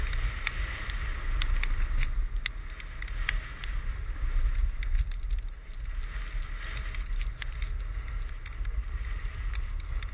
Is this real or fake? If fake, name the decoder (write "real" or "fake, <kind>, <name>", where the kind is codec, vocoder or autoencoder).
real